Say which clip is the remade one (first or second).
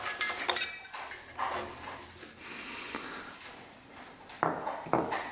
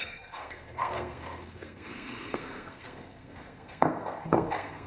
second